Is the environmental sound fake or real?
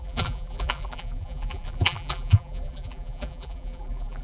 fake